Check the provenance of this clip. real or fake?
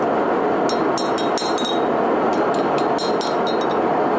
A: real